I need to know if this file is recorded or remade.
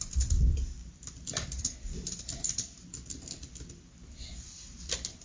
recorded